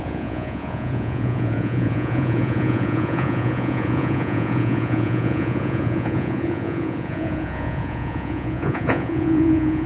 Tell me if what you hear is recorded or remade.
remade